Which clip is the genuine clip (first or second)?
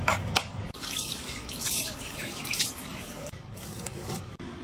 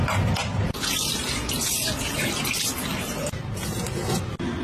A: second